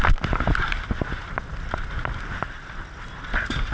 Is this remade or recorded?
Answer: recorded